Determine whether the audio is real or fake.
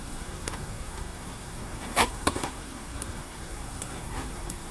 fake